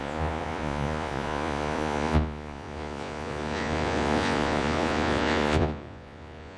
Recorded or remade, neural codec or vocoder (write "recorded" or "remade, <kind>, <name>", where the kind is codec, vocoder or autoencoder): remade, vocoder, Vocos